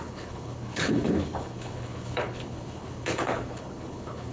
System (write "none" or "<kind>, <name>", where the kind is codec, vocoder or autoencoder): codec, HILCodec